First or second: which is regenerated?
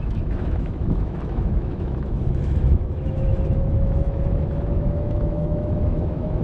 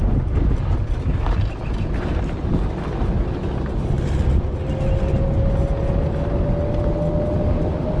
first